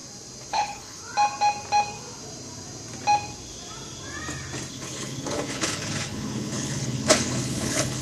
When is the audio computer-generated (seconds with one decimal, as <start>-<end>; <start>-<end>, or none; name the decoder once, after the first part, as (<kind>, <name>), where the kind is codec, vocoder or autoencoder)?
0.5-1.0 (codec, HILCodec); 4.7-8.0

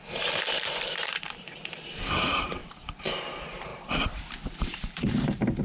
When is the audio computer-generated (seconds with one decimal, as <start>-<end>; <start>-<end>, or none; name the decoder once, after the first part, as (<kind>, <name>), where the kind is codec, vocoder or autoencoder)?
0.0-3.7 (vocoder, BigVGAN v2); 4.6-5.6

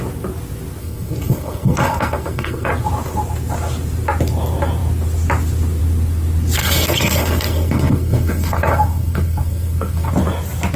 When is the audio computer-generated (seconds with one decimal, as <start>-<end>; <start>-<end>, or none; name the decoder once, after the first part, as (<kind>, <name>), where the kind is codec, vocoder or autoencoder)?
0.8-2.7 (codec, SNAC); 6.6-10.1